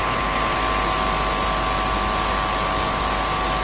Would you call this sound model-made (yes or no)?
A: no